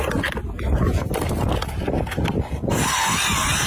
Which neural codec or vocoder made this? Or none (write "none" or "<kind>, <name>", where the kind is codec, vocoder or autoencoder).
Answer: none